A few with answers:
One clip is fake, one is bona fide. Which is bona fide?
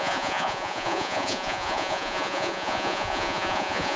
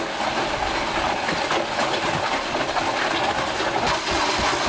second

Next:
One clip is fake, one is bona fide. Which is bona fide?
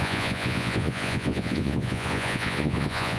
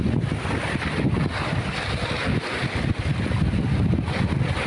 second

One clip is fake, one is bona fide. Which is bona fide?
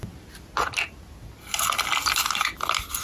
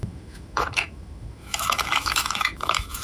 first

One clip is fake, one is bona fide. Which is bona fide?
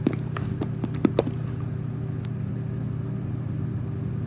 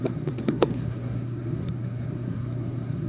first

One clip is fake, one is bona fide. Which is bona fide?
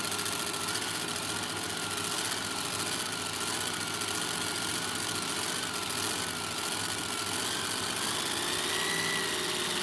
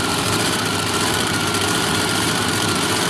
first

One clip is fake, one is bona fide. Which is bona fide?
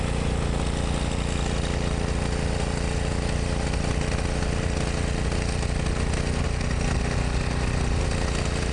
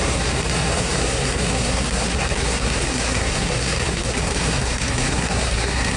first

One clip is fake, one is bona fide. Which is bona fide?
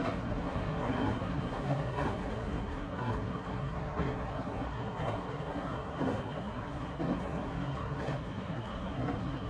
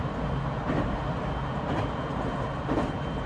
second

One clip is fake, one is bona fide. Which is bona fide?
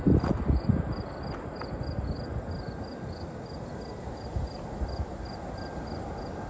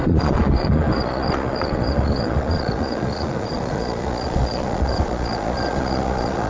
first